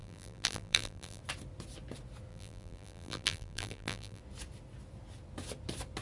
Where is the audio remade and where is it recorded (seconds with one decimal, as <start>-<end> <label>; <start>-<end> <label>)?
0.0-1.2 remade; 1.2-2.3 recorded; 2.3-4.2 remade; 4.2-6.0 recorded